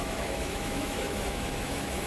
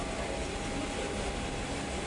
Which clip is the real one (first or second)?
second